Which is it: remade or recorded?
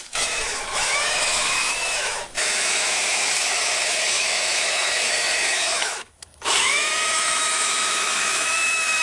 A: remade